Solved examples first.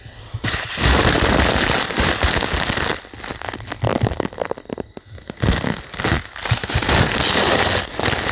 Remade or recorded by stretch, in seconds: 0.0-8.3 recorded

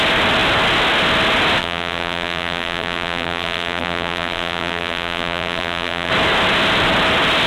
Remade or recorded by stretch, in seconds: 0.0-1.6 recorded; 1.6-6.1 remade; 6.1-7.5 recorded

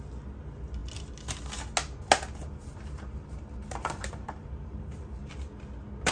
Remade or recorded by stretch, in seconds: 0.0-2.4 recorded; 2.4-5.3 remade; 5.3-6.1 recorded